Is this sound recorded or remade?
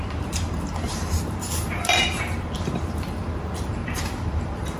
remade